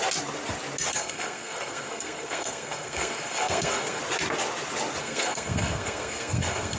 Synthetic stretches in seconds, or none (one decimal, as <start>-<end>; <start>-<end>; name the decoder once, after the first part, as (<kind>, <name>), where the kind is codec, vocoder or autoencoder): 0.9-4.0 (codec, SNAC); 5.0-6.8